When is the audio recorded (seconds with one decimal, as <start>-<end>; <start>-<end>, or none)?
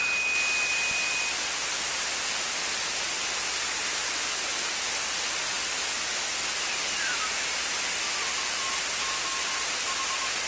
0.0-10.5